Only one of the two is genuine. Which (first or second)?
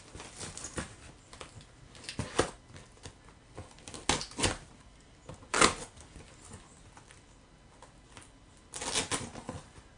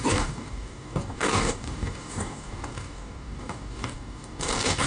first